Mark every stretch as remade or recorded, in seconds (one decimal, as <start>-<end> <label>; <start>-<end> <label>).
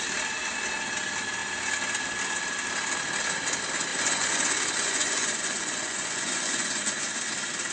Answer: 0.0-3.9 recorded; 3.9-7.1 remade; 7.1-7.7 recorded